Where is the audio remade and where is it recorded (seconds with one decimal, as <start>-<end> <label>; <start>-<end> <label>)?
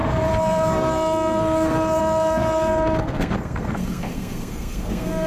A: 0.0-5.3 remade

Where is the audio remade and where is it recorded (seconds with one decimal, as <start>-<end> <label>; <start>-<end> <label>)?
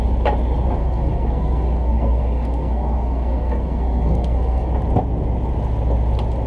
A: 0.0-0.8 recorded; 0.8-4.7 remade; 4.7-6.5 recorded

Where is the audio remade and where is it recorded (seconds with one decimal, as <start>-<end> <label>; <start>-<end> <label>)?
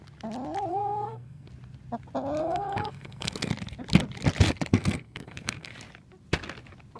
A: 0.0-0.7 recorded; 0.7-1.5 remade; 1.5-2.4 recorded; 2.4-3.5 remade; 3.5-4.7 recorded; 4.7-5.7 remade; 5.7-7.0 recorded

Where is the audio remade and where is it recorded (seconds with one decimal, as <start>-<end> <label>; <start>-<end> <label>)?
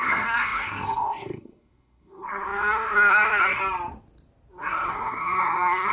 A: 0.0-3.6 remade; 3.6-4.6 recorded; 4.6-5.9 remade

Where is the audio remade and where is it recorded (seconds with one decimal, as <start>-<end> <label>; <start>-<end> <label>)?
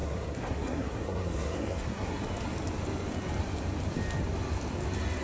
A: 0.0-2.2 remade; 2.2-5.2 recorded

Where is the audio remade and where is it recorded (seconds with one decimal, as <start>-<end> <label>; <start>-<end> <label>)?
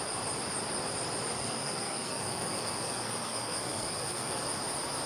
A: 0.0-1.3 recorded; 1.3-4.4 remade; 4.4-5.1 recorded